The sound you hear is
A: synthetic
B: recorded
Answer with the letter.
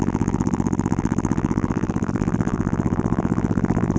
A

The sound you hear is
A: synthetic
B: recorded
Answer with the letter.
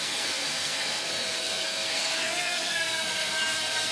A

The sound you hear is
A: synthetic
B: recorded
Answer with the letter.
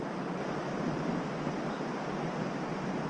A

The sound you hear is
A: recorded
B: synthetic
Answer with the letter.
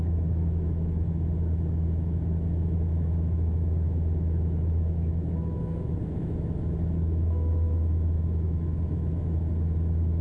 B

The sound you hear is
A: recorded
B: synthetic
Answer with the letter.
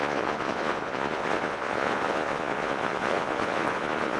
B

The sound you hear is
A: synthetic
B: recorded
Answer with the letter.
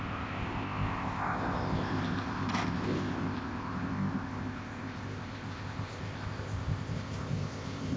A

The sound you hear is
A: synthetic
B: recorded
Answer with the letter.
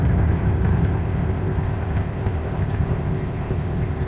A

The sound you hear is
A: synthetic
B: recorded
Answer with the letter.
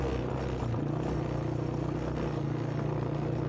B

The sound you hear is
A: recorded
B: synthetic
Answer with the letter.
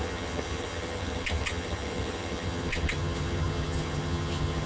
B